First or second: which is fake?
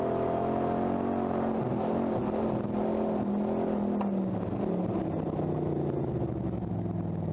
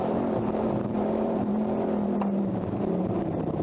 second